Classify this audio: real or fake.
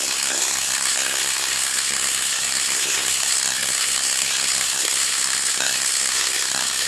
fake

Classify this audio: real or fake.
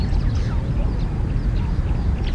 real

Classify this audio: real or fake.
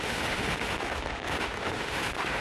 fake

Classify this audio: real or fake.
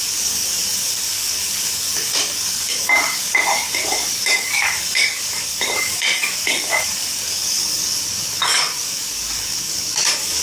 fake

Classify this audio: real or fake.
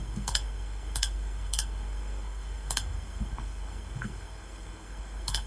fake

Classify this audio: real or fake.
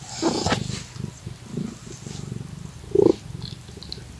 real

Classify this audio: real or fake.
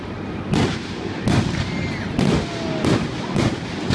real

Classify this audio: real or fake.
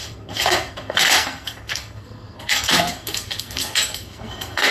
fake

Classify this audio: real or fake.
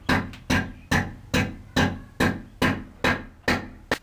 real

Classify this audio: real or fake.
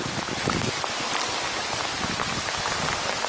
real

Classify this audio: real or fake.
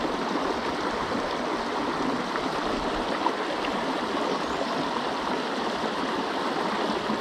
real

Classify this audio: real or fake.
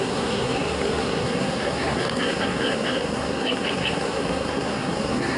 fake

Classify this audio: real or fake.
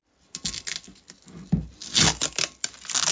real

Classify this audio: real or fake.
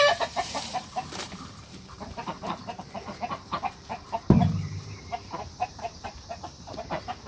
fake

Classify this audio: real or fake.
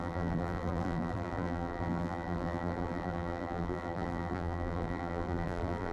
fake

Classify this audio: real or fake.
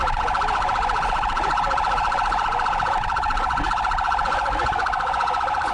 fake